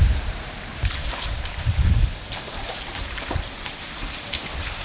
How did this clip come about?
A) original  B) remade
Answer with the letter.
B